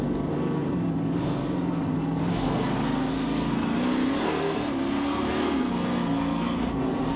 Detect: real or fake fake